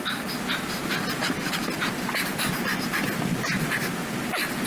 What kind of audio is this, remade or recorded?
recorded